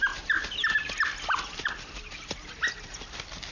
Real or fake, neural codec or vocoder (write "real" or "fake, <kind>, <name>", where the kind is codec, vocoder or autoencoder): real